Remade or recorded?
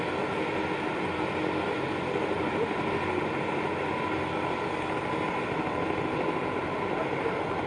recorded